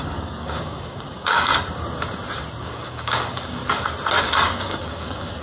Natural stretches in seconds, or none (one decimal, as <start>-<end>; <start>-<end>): 1.5-2.6; 3.6-4.2